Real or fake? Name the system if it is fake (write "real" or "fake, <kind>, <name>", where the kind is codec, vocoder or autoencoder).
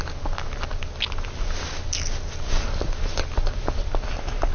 real